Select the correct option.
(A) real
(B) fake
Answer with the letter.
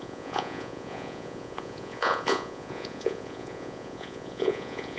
B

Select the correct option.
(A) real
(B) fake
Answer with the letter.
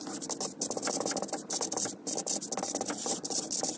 A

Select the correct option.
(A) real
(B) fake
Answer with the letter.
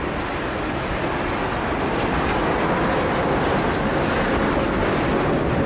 A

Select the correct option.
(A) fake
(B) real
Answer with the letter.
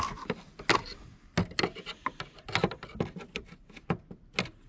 B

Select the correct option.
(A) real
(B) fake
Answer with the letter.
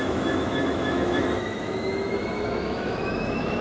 B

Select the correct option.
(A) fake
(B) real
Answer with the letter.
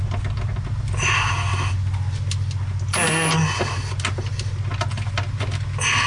B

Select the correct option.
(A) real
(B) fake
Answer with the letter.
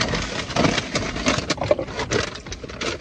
A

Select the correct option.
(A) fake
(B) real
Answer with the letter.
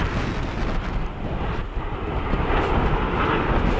B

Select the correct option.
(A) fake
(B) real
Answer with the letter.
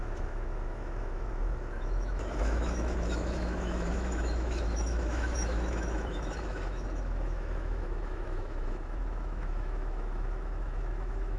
A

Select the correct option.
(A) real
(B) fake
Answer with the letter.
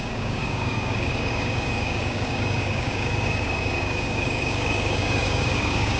B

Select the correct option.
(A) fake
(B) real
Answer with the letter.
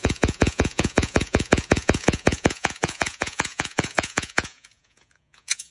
A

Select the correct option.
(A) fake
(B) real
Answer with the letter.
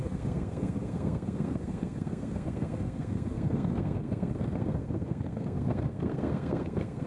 A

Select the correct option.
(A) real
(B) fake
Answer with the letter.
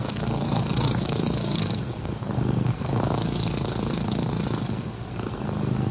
B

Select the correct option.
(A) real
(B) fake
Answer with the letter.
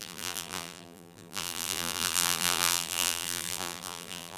B